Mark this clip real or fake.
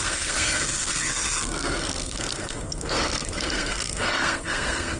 fake